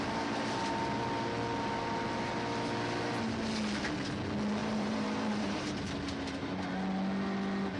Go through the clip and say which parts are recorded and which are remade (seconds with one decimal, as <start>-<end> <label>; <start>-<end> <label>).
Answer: 0.0-4.6 recorded; 4.6-5.8 remade; 5.8-7.8 recorded